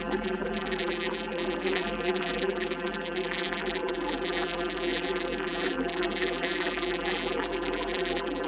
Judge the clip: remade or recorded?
remade